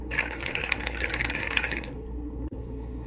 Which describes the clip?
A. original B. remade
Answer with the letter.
B